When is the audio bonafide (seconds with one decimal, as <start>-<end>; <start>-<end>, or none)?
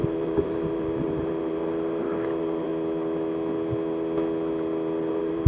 2.7-5.1